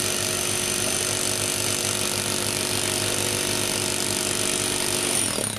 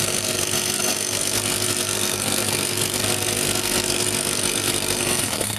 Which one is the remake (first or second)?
second